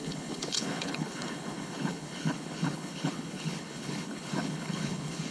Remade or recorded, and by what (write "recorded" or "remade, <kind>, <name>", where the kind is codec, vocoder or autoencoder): remade, codec, HILCodec